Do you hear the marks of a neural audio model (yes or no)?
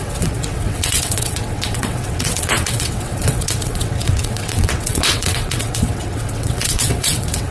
yes